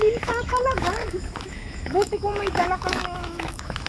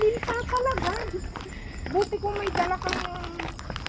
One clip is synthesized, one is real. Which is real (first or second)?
second